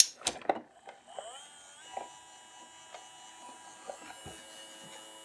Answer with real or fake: real